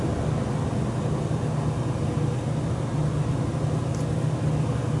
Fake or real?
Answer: real